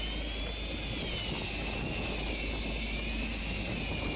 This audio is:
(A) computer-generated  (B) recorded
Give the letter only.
B